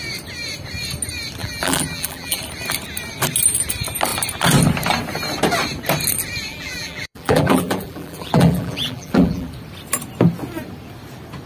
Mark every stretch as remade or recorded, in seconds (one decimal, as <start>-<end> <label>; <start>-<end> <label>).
0.0-1.4 recorded; 1.4-2.4 remade; 2.4-6.5 recorded; 6.5-9.5 remade; 9.5-11.5 recorded